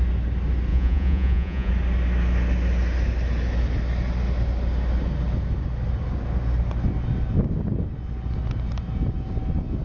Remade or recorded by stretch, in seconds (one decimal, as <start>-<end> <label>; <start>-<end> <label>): 0.0-0.7 recorded; 0.7-1.7 remade; 1.7-9.8 recorded